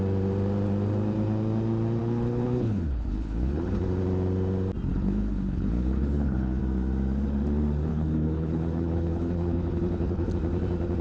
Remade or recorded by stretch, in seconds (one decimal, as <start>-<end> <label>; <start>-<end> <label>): 0.0-2.0 recorded; 2.0-3.7 remade; 3.7-4.9 recorded; 4.9-6.6 remade; 6.6-7.9 recorded; 7.9-10.3 remade; 10.3-11.0 recorded